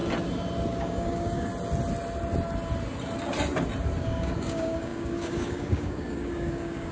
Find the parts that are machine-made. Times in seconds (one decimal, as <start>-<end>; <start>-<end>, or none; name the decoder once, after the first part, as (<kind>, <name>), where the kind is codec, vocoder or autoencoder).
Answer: 0.8-1.5 (codec, DAC); 4.0-6.9